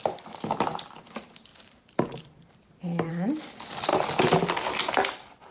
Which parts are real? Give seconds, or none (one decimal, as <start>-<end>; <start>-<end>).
0.0-5.5